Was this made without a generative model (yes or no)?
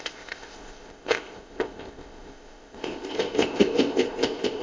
no